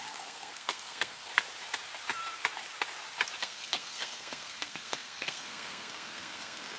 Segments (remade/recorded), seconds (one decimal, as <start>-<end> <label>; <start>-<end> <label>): 0.0-1.3 remade; 1.3-3.4 recorded; 3.4-6.8 remade